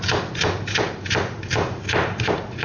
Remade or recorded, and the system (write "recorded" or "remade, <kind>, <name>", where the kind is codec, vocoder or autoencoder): recorded